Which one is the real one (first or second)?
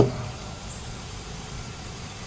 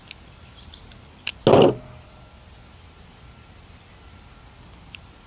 second